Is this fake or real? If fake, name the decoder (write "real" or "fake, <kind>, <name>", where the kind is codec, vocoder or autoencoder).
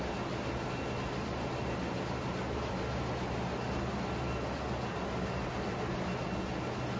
real